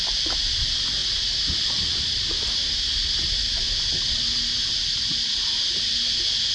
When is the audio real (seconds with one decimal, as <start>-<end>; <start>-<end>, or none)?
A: 0.0-6.5